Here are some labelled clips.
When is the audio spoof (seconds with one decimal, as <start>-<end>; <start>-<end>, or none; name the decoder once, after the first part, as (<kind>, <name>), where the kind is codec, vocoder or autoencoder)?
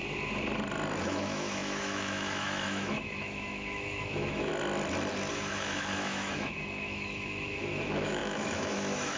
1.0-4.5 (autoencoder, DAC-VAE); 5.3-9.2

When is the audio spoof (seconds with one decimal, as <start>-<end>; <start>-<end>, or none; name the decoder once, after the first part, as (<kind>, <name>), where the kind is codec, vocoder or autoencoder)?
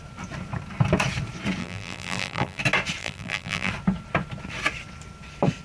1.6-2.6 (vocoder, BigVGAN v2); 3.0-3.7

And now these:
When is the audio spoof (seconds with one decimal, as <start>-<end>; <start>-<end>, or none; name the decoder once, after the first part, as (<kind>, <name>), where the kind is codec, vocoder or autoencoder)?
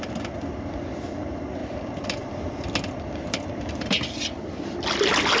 1.6-4.8 (vocoder, BigVGAN v2)